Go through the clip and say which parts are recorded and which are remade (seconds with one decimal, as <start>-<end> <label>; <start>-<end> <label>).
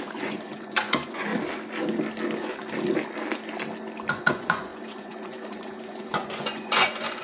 0.0-1.3 remade; 1.3-4.1 recorded; 4.1-7.2 remade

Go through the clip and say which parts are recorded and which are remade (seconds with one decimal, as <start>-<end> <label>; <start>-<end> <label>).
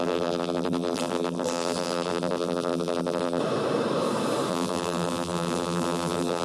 0.0-3.4 remade; 3.4-4.5 recorded; 4.5-6.4 remade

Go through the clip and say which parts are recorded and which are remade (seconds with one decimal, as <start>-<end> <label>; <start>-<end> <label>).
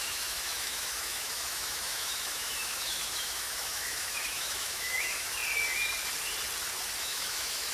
0.0-5.4 remade; 5.4-7.0 recorded; 7.0-7.7 remade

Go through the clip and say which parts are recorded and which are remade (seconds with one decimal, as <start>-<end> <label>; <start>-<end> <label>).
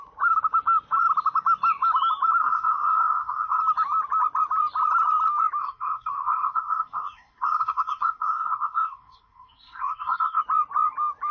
0.0-2.4 recorded; 2.4-3.6 remade; 3.6-5.6 recorded; 5.6-10.4 remade; 10.4-11.3 recorded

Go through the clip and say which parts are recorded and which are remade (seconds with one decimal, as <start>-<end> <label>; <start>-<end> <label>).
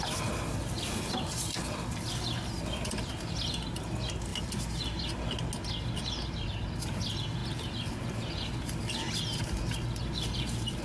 0.0-10.8 recorded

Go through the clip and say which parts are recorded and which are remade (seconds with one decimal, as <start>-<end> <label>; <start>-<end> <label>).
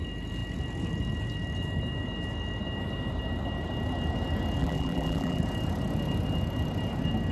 0.0-4.6 recorded; 4.6-5.4 remade; 5.4-7.3 recorded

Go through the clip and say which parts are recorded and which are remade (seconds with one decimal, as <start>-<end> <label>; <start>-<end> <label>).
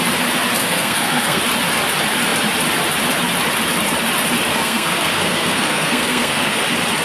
0.0-0.6 recorded; 0.6-1.4 remade; 1.4-4.5 recorded; 4.5-6.6 remade; 6.6-7.0 recorded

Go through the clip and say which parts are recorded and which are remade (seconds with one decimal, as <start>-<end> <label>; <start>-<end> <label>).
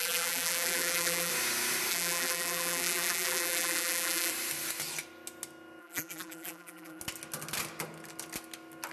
0.0-1.3 remade; 1.3-1.9 recorded; 1.9-4.3 remade; 4.3-5.8 recorded; 5.8-7.0 remade; 7.0-8.9 recorded